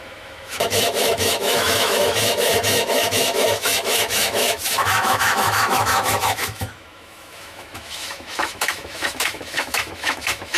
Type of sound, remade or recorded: remade